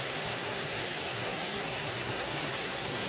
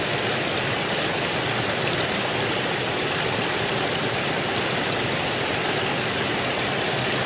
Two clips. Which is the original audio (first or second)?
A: second